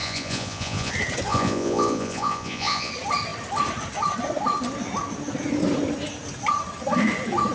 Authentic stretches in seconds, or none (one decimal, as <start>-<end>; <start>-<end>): 0.9-1.3; 2.9-7.5

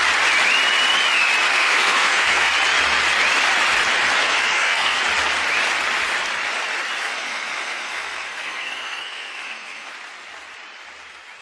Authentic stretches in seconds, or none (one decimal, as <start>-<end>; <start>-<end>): 0.0-1.5; 2.5-4.2; 5.0-7.0; 9.9-11.4

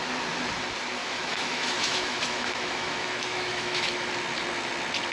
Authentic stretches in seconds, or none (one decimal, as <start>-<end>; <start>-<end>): 0.0-1.0; 4.1-5.1